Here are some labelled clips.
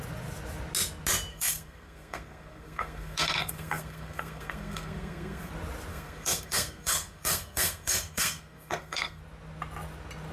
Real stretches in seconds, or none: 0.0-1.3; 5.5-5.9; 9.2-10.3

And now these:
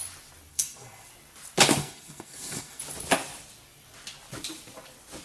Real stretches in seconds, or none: 0.0-0.5; 1.1-1.8; 2.8-5.2

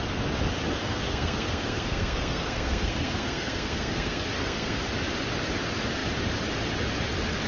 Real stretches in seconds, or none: 0.0-0.8; 4.8-7.5